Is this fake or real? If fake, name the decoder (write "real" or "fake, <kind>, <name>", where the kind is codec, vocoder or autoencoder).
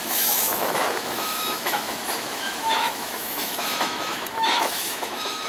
fake, autoencoder, DAC-VAE